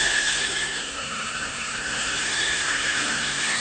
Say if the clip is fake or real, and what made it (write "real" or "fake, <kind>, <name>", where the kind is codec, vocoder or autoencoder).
fake, codec, SNAC